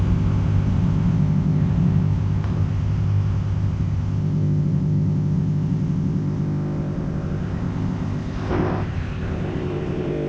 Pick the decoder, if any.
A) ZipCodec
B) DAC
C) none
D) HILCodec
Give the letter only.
A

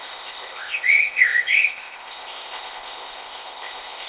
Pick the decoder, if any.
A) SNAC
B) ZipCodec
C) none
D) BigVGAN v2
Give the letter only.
B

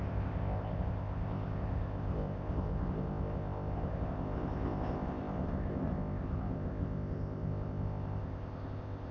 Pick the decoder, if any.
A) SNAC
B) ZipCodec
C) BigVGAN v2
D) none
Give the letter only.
B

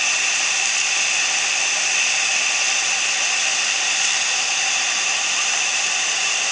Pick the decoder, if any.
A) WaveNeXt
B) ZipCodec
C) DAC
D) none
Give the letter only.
D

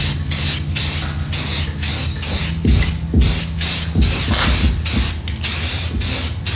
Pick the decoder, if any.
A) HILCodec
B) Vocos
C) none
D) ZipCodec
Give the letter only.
C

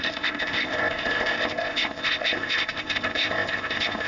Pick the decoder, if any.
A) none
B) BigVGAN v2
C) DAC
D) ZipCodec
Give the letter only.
D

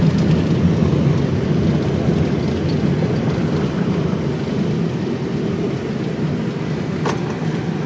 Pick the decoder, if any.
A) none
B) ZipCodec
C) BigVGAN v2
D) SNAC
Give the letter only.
A